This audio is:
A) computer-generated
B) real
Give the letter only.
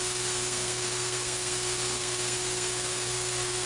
A